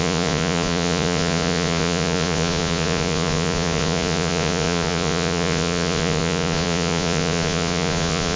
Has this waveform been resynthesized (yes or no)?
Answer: yes